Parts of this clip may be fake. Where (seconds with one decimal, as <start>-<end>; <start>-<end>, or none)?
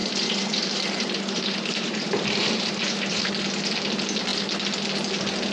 0.0-3.3